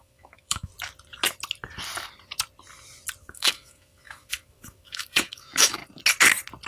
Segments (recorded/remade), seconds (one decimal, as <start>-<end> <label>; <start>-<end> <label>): 0.0-0.7 remade; 0.7-3.2 recorded; 3.2-5.8 remade; 5.8-6.7 recorded